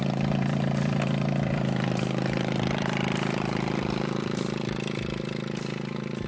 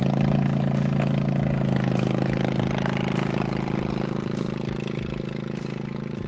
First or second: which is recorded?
second